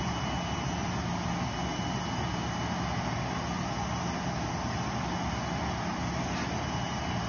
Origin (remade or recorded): recorded